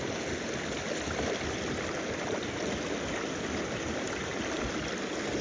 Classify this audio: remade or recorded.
recorded